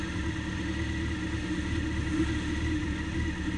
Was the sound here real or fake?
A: real